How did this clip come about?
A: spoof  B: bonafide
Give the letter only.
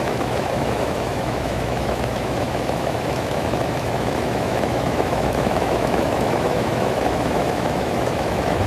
A